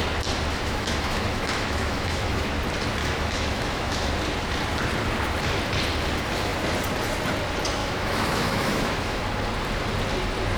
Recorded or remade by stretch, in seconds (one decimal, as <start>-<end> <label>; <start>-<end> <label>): 0.0-0.5 recorded; 0.5-2.5 remade; 2.5-3.0 recorded; 3.0-4.1 remade; 4.1-7.8 recorded; 7.8-9.2 remade; 9.2-10.6 recorded

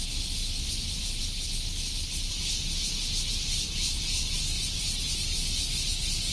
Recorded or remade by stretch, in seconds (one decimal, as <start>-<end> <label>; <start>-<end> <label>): 0.0-6.3 recorded